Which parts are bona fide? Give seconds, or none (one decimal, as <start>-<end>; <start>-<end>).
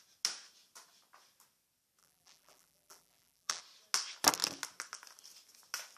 0.0-2.0; 3.6-6.0